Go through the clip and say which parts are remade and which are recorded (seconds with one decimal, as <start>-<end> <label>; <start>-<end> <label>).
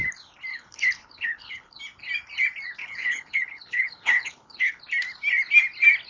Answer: 0.0-0.5 recorded; 0.5-1.8 remade; 1.8-2.8 recorded; 2.8-4.8 remade; 4.8-6.1 recorded